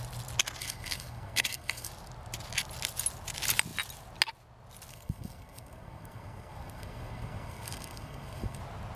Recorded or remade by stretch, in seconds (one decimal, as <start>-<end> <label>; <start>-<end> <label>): 0.0-0.6 recorded; 0.6-1.9 remade; 1.9-4.9 recorded; 4.9-8.6 remade; 8.6-9.0 recorded